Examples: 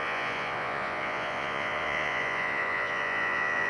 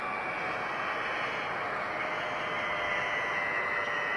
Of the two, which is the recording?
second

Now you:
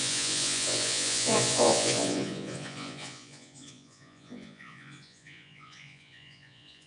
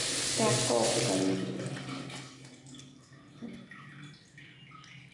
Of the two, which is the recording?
second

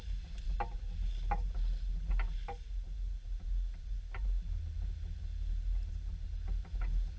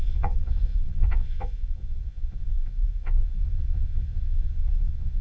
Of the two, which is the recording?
first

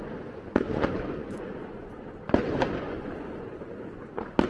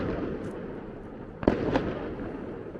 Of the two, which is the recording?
second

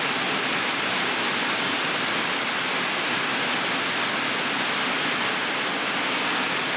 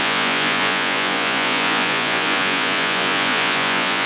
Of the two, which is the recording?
first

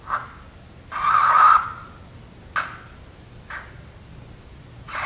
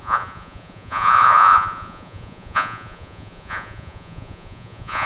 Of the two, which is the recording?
first